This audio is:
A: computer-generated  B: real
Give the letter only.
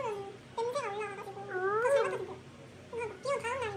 B